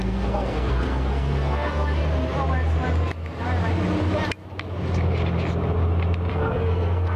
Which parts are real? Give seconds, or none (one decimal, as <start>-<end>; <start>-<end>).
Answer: 2.0-6.3